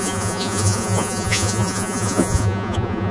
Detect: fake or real fake